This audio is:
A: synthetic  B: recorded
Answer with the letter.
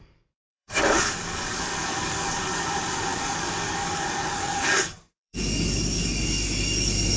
A